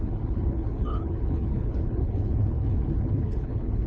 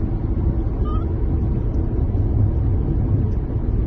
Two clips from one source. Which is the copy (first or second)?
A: first